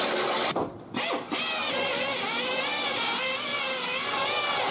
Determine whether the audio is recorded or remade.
recorded